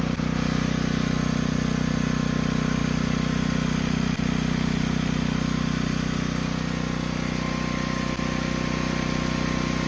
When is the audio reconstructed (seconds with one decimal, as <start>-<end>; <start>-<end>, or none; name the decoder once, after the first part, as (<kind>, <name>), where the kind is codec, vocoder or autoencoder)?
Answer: none